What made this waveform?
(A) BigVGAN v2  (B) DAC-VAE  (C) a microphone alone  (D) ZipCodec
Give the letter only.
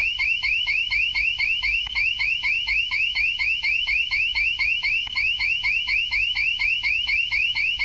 B